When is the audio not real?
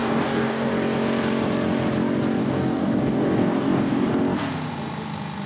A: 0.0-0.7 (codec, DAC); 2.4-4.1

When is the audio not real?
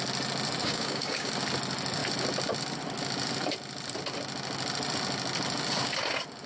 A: 0.6-1.3 (codec, DAC)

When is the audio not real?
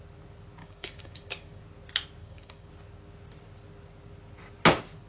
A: 0.6-1.6 (codec, DAC); 2.2-2.7